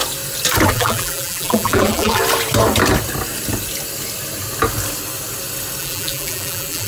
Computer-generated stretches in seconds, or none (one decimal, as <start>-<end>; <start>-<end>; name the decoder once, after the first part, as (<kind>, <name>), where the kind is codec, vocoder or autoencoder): 0.7-2.2 (vocoder, BigVGAN v2); 5.8-6.9